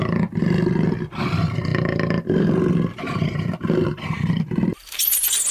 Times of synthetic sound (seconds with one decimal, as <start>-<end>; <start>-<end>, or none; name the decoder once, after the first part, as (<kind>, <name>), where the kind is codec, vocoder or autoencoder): 1.7-5.0 (vocoder, BigVGAN v2)